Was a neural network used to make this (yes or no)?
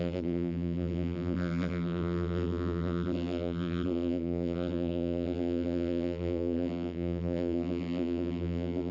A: yes